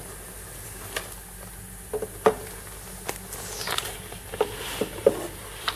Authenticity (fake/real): real